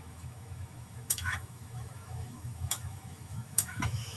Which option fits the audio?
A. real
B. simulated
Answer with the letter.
B